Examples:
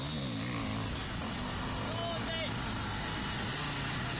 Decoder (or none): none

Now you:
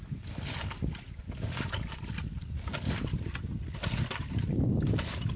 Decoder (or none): none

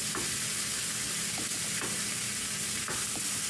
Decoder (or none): none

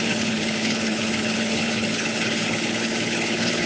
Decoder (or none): codec, HILCodec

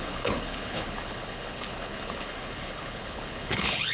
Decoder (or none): codec, HILCodec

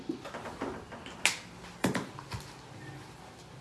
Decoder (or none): none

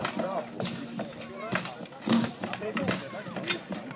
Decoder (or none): none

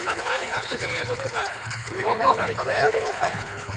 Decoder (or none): codec, HILCodec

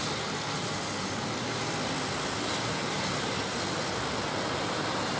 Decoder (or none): none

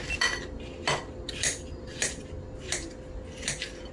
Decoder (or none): none